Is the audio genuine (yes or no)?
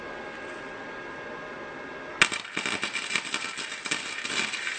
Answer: yes